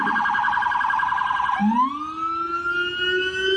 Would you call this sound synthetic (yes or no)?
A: no